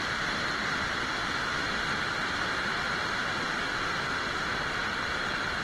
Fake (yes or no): no